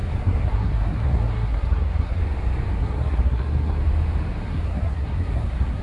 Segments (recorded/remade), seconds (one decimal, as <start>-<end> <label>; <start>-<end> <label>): 0.0-2.2 remade; 2.2-2.8 recorded; 2.8-3.8 remade; 3.8-4.4 recorded; 4.4-5.8 remade